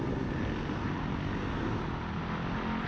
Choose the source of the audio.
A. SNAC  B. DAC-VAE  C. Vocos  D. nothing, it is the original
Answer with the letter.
D